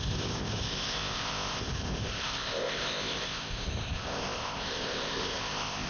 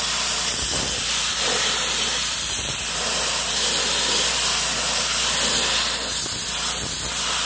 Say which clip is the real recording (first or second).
second